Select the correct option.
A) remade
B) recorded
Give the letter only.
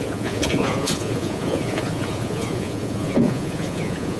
A